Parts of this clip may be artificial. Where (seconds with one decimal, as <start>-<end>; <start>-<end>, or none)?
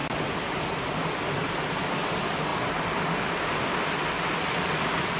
none